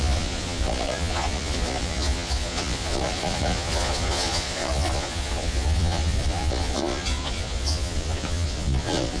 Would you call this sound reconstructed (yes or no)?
yes